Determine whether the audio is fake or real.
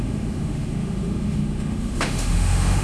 fake